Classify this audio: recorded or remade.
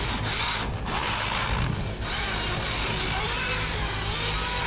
recorded